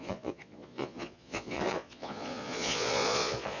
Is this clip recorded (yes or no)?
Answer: no